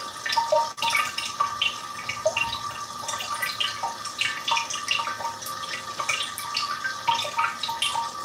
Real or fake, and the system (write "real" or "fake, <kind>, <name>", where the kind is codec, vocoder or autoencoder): real